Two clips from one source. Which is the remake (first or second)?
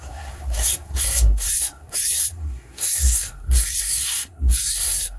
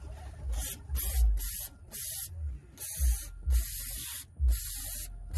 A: first